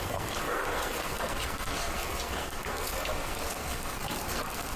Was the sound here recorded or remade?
remade